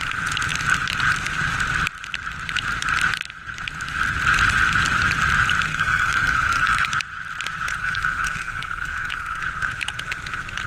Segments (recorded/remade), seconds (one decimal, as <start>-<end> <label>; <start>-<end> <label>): 0.0-5.7 recorded; 5.7-6.9 remade; 6.9-7.8 recorded; 7.8-9.4 remade; 9.4-10.7 recorded

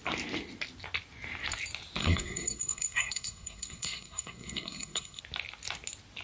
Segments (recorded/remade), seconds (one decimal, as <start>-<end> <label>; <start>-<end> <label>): 0.0-2.0 recorded; 2.0-5.2 remade; 5.2-6.2 recorded

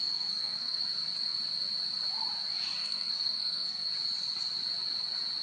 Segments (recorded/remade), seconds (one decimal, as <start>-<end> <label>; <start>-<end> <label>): 0.0-0.8 remade; 0.8-2.8 recorded; 2.8-3.9 remade; 3.9-5.4 recorded

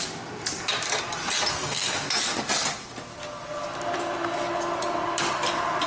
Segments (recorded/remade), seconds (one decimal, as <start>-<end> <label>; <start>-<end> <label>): 0.0-1.5 recorded; 1.5-2.1 remade; 2.1-5.9 recorded